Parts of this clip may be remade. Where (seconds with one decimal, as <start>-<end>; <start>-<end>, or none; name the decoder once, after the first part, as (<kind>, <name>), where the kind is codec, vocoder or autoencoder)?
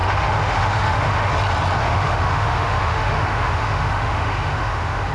0.0-1.3 (autoencoder, DAC-VAE); 1.8-5.1